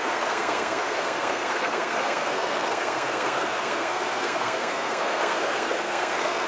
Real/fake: fake